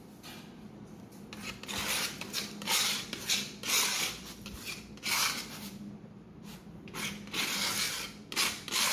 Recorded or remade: remade